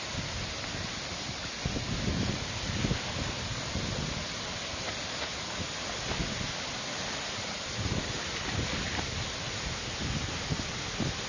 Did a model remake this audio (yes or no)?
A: no